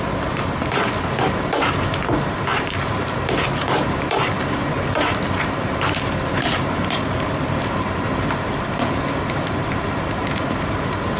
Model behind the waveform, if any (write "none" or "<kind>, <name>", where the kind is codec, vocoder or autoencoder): vocoder, BigVGAN v2